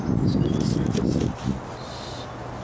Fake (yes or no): no